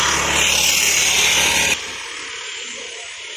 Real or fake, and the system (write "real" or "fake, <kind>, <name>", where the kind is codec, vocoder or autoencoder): real